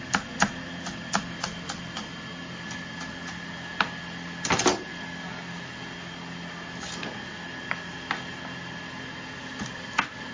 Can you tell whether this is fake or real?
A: real